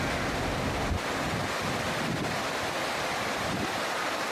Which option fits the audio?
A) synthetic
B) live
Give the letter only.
B